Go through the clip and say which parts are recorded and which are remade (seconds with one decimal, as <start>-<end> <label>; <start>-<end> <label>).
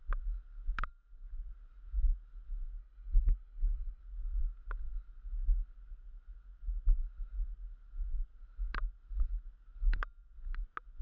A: 0.0-2.8 recorded; 2.8-4.0 remade; 4.0-11.0 recorded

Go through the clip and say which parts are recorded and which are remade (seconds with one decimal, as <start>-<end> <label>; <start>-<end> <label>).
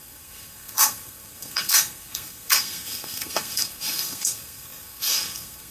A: 0.0-5.7 remade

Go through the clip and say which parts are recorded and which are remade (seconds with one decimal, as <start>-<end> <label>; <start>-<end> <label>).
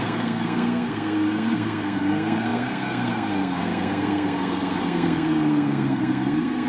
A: 0.0-6.7 remade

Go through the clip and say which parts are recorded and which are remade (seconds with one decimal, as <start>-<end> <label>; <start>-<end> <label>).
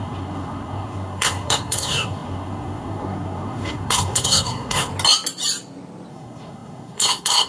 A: 0.0-4.9 remade; 4.9-6.1 recorded; 6.1-7.5 remade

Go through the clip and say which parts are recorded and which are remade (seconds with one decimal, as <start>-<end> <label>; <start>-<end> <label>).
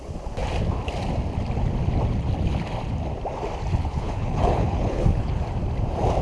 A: 0.0-3.8 recorded; 3.8-5.4 remade; 5.4-6.2 recorded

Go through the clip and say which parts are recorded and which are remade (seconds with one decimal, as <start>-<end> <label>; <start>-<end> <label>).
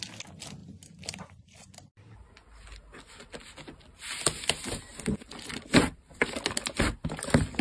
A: 0.0-0.6 recorded; 0.6-2.3 remade; 2.3-4.9 recorded; 4.9-6.3 remade; 6.3-7.6 recorded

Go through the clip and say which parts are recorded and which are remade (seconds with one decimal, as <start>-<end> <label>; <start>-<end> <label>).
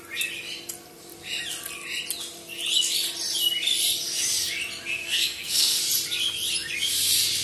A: 0.0-5.0 recorded; 5.0-5.8 remade; 5.8-7.4 recorded